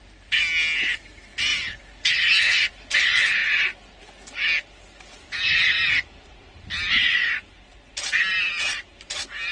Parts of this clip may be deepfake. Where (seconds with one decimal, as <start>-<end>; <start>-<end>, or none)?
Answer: none